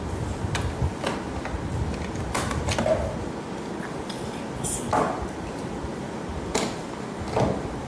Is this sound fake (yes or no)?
no